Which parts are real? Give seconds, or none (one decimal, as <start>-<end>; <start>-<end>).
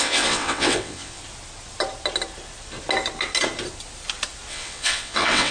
1.2-4.5